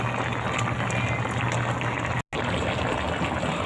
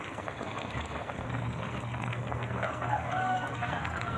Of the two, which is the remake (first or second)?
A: second